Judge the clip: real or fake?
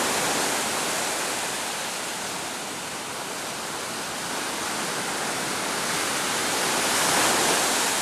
real